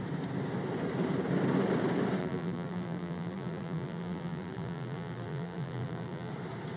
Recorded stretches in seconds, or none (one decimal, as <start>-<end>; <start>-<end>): 0.0-2.2; 6.3-6.8